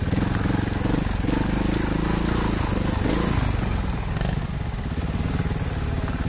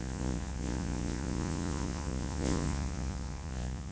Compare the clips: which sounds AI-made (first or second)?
second